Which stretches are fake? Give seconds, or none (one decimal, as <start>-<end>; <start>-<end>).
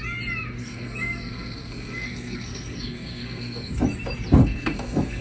0.6-3.7; 4.4-5.2